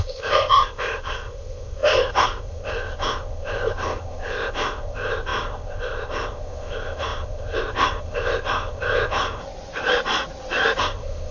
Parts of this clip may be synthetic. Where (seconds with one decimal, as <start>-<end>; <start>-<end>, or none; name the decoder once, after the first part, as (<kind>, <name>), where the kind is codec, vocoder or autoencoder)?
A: 0.0-9.4 (codec, ZipCodec); 10.8-11.3

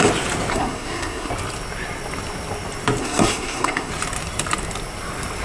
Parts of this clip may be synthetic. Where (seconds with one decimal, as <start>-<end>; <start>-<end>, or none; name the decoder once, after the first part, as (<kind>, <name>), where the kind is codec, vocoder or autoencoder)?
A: 0.5-1.3 (codec, SNAC); 3.0-3.9

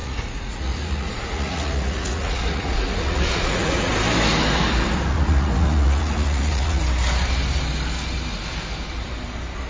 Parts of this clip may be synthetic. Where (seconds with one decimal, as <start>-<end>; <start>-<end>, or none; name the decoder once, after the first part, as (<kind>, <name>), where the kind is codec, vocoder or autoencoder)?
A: 0.0-3.9 (vocoder, Vocos); 5.1-6.8

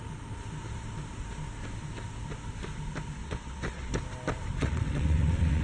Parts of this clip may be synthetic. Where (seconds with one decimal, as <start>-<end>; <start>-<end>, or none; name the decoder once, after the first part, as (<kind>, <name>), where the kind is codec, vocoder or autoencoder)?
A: 3.2-3.9 (vocoder, WaveNeXt); 4.5-5.6

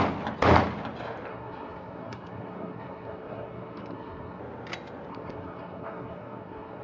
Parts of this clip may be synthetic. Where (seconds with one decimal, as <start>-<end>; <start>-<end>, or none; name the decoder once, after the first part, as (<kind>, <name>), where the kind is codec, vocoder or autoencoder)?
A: 1.3-4.4 (codec, SNAC); 5.1-6.8